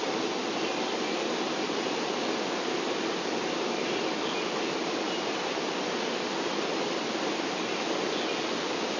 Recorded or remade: recorded